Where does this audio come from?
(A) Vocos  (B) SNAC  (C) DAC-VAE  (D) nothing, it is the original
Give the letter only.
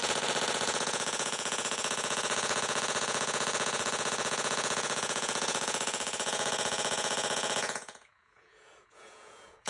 A